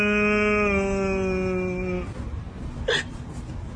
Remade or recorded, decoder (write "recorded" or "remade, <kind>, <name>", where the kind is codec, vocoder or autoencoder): recorded